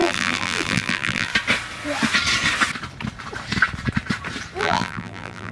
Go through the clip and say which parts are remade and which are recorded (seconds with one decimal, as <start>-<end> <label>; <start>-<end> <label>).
0.0-1.3 remade; 1.3-4.6 recorded; 4.6-5.5 remade